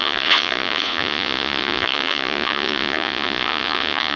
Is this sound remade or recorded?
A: remade